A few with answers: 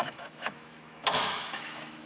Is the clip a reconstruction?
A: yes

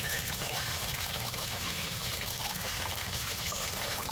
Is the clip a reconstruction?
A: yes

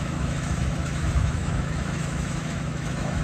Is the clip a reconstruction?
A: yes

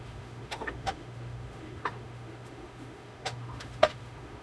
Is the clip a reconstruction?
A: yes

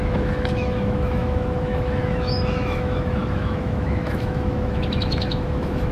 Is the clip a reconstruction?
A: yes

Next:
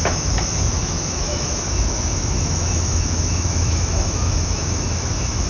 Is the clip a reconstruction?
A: yes